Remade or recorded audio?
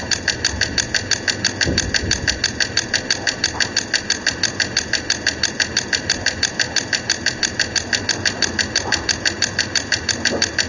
recorded